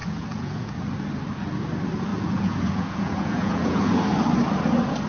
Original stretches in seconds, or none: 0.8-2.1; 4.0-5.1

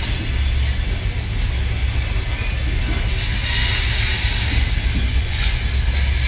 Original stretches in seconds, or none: 0.0-5.0; 5.6-6.3

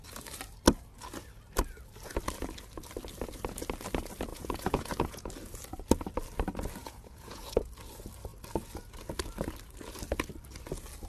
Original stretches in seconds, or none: 0.0-4.3; 5.3-6.8; 7.7-11.1